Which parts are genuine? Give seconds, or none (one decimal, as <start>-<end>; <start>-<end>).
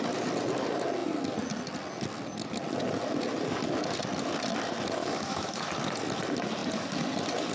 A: 0.0-5.0; 5.7-7.5